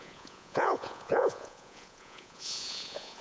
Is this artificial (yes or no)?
yes